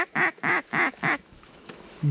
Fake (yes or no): yes